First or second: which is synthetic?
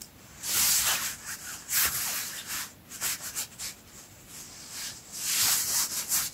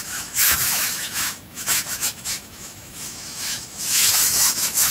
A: second